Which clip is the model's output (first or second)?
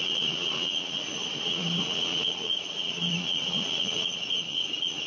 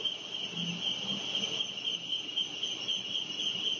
first